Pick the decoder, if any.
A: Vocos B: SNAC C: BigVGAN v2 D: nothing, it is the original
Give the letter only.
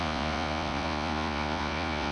A